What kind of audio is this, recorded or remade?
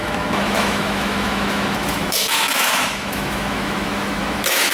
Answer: remade